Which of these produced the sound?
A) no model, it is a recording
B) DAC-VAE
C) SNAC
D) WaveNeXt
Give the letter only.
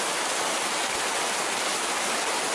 A